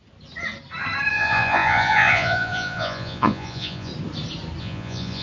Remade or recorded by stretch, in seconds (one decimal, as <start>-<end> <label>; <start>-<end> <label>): 0.0-1.1 recorded; 1.1-3.9 remade; 3.9-4.6 recorded; 4.6-5.2 remade